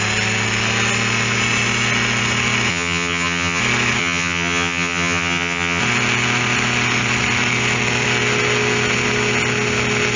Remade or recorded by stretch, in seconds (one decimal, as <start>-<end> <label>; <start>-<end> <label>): 0.0-2.7 recorded; 2.7-3.6 remade; 3.6-4.0 recorded; 4.0-5.8 remade; 5.8-10.2 recorded